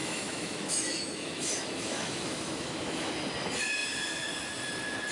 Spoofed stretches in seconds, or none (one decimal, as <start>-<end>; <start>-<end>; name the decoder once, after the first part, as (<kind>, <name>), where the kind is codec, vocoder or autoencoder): 0.0-3.1 (autoencoder, DAC-VAE)